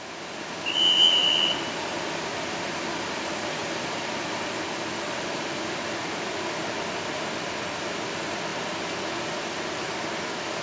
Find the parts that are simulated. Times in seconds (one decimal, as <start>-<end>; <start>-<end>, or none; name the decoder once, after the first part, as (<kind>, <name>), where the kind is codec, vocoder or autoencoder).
none